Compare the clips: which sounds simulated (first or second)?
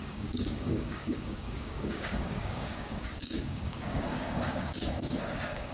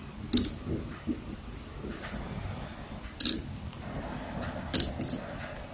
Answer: first